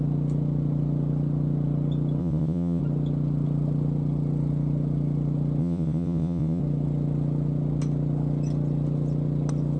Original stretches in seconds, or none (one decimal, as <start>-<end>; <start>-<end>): 0.0-2.2; 2.8-5.6; 6.6-9.8